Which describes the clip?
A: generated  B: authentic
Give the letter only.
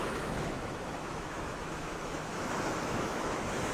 A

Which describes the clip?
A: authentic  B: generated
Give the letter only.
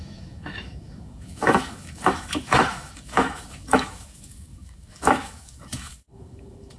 B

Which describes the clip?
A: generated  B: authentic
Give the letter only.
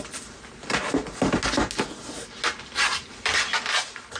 B